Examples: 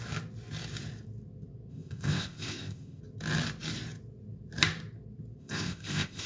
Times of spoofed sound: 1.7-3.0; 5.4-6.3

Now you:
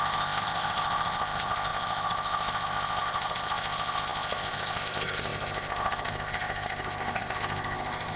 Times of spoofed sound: 0.0-8.2